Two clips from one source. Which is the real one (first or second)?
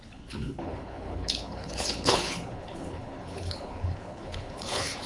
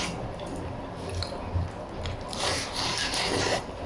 second